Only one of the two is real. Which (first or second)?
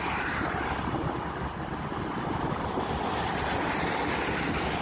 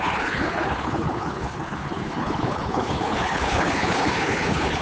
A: first